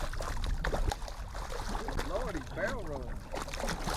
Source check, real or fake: real